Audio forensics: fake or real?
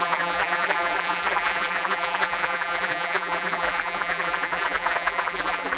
fake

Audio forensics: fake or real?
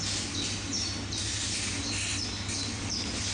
real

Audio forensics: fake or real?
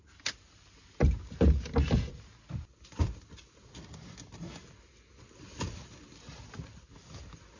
real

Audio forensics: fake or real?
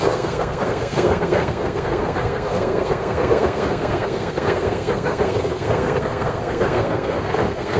fake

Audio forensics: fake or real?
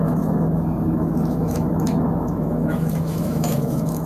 fake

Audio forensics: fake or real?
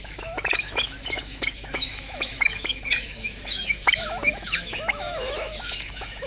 fake